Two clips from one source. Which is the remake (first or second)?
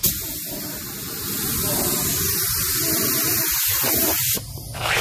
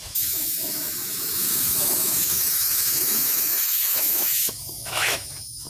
second